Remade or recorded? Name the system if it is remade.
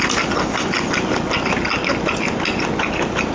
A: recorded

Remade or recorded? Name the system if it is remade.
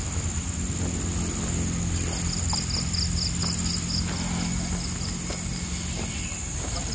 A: recorded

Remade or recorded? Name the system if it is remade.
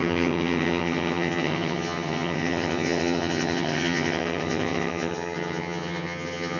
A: remade, vocoder, HiFi-GAN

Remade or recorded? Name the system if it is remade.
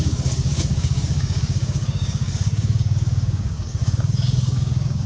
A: remade, codec, DAC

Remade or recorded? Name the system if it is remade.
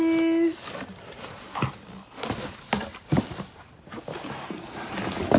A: recorded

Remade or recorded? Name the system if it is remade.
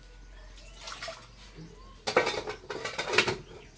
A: recorded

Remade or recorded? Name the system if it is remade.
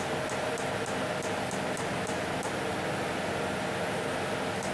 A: recorded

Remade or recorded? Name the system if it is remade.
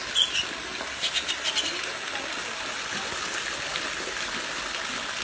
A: recorded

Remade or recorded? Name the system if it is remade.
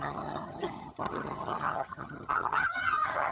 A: remade, vocoder, HiFi-GAN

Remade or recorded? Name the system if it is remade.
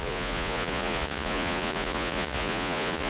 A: remade, vocoder, Vocos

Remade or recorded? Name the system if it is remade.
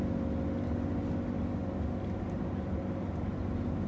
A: recorded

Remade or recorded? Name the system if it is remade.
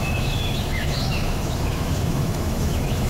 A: remade, autoencoder, DAC-VAE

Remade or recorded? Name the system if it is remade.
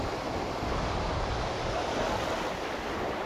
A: remade, vocoder, BigVGAN v2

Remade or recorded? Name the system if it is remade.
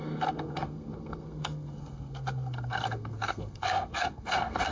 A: remade, codec, SNAC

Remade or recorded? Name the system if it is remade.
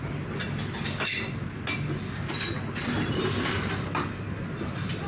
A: recorded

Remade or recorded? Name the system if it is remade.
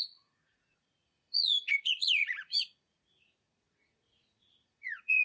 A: remade, vocoder, Vocos